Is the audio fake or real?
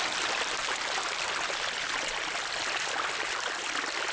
real